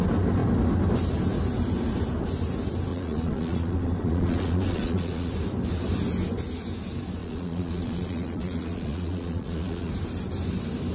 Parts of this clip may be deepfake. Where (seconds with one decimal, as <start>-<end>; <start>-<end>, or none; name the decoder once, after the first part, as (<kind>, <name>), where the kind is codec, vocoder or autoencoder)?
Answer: 2.9-5.3 (vocoder, Vocos); 7.2-9.9